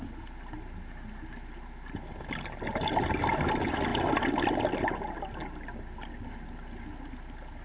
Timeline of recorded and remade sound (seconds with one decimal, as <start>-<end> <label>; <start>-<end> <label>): 0.0-7.6 recorded